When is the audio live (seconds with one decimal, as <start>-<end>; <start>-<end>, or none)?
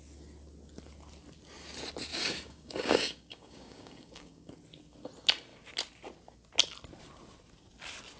0.0-2.1; 4.5-8.2